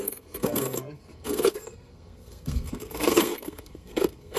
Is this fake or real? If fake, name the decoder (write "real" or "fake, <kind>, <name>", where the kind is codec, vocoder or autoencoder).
fake, codec, SNAC